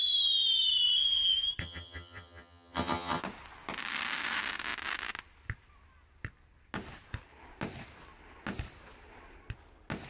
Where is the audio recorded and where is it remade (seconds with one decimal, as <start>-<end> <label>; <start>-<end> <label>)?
0.0-1.6 recorded; 1.6-3.2 remade; 3.2-10.1 recorded

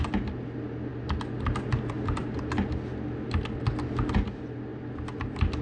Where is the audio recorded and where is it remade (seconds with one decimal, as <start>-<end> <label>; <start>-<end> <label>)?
0.0-5.6 recorded

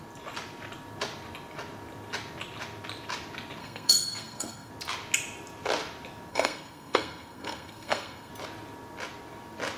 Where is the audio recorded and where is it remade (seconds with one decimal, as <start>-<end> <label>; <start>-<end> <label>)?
0.0-3.6 recorded; 3.6-4.7 remade; 4.7-6.3 recorded; 6.3-8.3 remade; 8.3-9.8 recorded

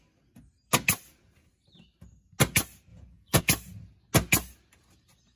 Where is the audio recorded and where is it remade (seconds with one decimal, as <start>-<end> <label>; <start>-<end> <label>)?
0.0-2.9 recorded; 2.9-3.4 remade; 3.4-5.4 recorded

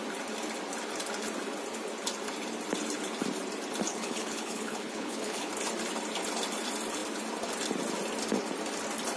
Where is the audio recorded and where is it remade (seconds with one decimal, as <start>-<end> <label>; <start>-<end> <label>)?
0.0-3.9 recorded; 3.9-5.5 remade; 5.5-9.2 recorded